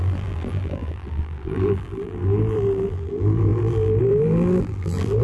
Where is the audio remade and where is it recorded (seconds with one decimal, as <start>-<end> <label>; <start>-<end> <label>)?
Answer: 0.0-5.2 remade